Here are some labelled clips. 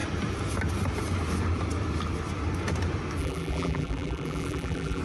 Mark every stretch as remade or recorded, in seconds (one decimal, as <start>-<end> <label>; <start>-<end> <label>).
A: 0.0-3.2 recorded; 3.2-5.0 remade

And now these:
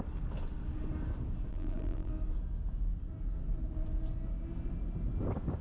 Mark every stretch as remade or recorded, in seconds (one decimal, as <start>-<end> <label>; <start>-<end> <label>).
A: 0.0-1.5 recorded; 1.5-2.1 remade; 2.1-5.6 recorded

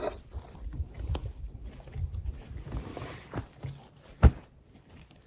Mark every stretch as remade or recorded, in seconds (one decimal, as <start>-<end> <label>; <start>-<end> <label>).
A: 0.0-1.2 remade; 1.2-2.2 recorded; 2.2-5.3 remade